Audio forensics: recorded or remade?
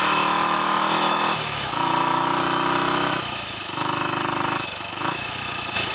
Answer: remade